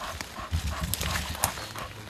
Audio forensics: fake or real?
real